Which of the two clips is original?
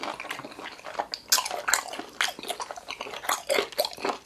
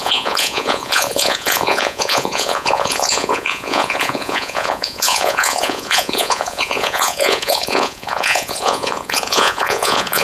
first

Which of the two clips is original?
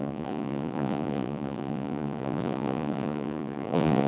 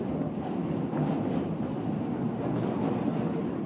second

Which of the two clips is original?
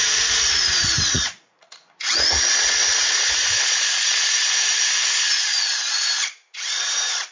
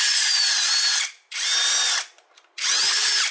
second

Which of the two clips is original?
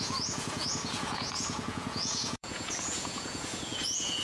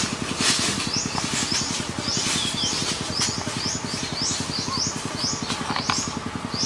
second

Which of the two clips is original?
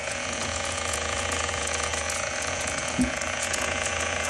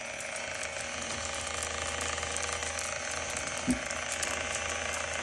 second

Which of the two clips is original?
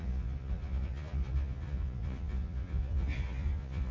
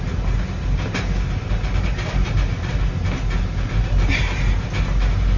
second